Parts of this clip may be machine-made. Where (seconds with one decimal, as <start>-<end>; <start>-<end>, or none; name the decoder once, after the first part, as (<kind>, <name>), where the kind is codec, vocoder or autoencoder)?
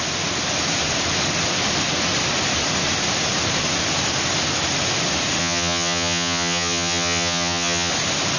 5.4-7.9 (vocoder, HiFi-GAN)